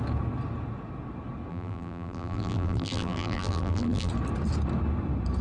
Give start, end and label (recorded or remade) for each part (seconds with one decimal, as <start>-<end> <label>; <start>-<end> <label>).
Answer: 0.0-1.5 recorded; 1.5-4.1 remade; 4.1-5.4 recorded